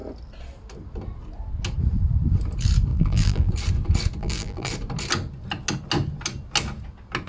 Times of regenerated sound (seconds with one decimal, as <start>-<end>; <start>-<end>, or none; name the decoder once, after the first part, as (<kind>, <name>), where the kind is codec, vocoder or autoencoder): 2.9-3.5 (vocoder, BigVGAN v2); 4.2-4.7